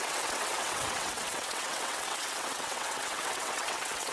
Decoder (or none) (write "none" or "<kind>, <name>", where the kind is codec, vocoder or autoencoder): vocoder, WaveNeXt